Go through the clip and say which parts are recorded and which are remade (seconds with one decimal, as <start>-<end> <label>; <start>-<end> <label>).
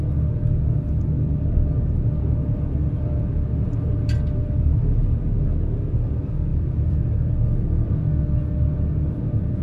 0.0-6.5 recorded; 6.5-7.9 remade; 7.9-9.6 recorded